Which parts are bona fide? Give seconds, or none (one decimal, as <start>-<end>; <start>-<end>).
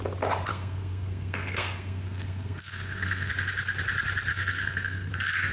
0.0-0.5; 3.3-4.3; 5.1-5.5